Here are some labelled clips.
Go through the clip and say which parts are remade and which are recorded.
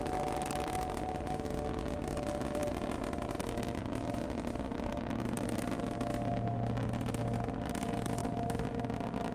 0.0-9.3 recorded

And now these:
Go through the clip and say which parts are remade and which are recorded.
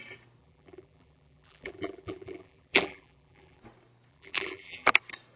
0.0-0.4 recorded; 0.4-3.6 remade; 3.6-4.1 recorded; 4.1-4.9 remade; 4.9-5.4 recorded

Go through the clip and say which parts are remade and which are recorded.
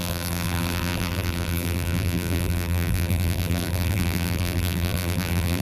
0.0-5.6 remade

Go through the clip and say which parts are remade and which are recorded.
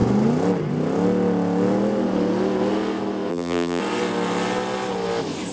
0.0-3.3 recorded; 3.3-3.8 remade; 3.8-5.5 recorded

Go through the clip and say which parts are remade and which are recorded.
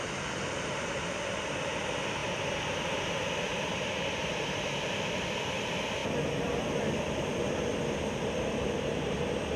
0.0-3.5 recorded; 3.5-4.3 remade; 4.3-9.6 recorded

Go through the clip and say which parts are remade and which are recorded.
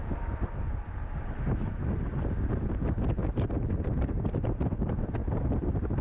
0.0-1.0 recorded; 1.0-2.6 remade; 2.6-3.2 recorded; 3.2-4.7 remade; 4.7-5.2 recorded; 5.2-6.0 remade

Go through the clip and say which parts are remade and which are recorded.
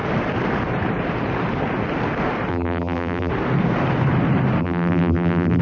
0.0-2.5 recorded; 2.5-3.3 remade; 3.3-4.6 recorded; 4.6-5.6 remade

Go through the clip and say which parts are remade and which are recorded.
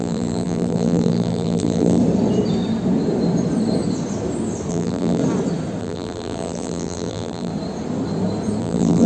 0.0-2.0 remade; 2.0-4.7 recorded; 4.7-5.2 remade; 5.2-5.8 recorded; 5.8-7.5 remade; 7.5-8.6 recorded; 8.6-9.1 remade